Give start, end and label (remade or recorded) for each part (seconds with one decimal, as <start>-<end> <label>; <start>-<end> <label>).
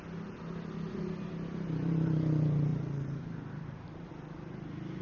0.0-2.7 recorded; 2.7-4.1 remade; 4.1-5.0 recorded